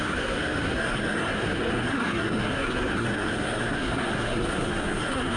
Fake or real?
fake